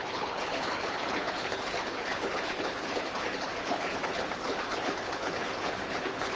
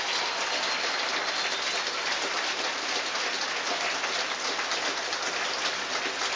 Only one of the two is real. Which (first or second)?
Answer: second